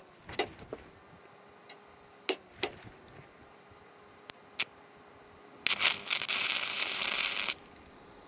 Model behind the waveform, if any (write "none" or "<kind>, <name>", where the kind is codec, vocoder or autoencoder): none